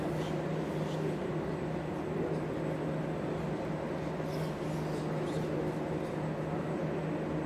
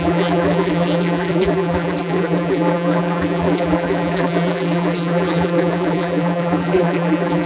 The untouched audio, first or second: first